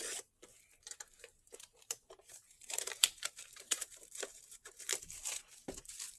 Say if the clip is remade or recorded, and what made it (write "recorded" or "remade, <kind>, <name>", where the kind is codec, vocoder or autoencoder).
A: remade, vocoder, BigVGAN v2